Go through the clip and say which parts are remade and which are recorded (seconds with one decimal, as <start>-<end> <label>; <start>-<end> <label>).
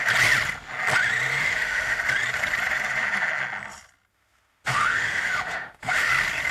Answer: 0.0-1.4 recorded; 1.4-2.0 remade; 2.0-4.1 recorded; 4.1-6.1 remade; 6.1-6.5 recorded